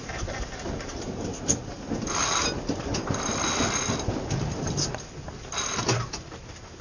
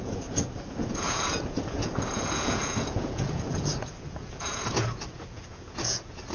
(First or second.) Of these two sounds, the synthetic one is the second